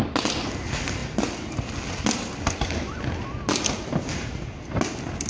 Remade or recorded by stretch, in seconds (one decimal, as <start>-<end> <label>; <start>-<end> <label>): 0.0-5.3 recorded